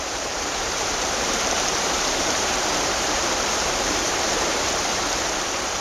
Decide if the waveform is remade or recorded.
remade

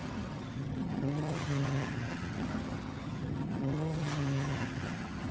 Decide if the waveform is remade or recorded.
remade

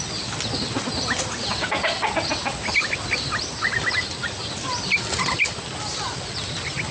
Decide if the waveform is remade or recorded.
recorded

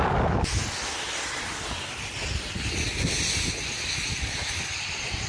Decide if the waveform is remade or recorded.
recorded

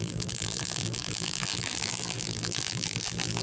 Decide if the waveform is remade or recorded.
remade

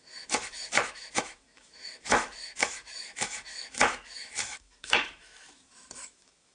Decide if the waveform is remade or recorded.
remade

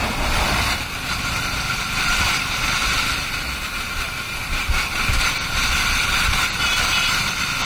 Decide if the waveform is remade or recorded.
remade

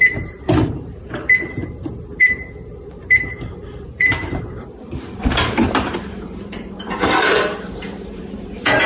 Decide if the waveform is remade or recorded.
remade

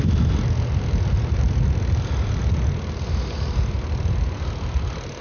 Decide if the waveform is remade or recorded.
recorded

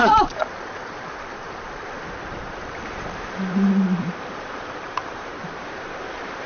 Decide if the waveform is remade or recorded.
remade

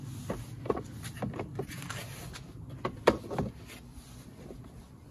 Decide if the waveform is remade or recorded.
recorded